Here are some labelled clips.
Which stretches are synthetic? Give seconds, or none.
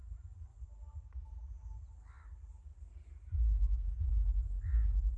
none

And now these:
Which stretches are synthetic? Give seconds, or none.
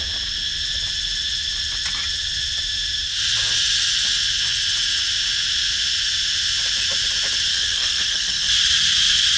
7.5-8.5 (codec, SNAC)